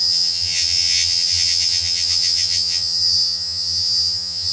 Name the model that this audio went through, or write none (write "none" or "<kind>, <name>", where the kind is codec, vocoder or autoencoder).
vocoder, HiFi-GAN